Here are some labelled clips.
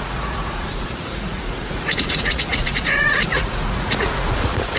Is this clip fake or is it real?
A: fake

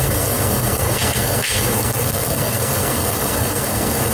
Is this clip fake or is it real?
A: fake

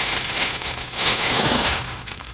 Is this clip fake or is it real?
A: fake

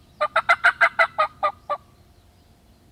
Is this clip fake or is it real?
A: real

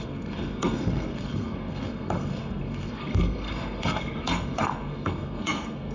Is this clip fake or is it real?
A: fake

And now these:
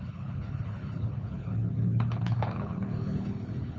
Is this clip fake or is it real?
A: fake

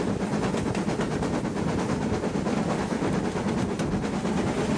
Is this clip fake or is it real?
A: real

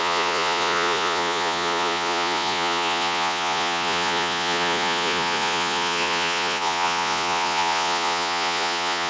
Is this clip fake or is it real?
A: fake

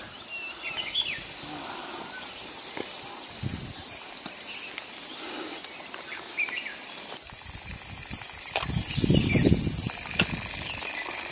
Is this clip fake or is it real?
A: real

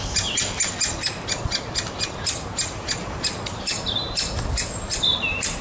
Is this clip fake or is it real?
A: real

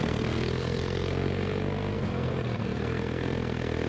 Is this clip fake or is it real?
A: fake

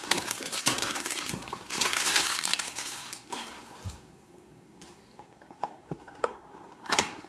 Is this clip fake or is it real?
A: fake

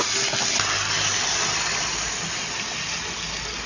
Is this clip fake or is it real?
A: real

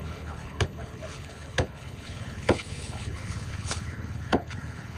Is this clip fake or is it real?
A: fake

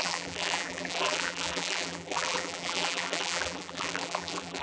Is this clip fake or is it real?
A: fake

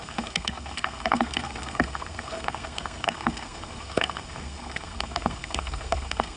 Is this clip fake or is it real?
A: fake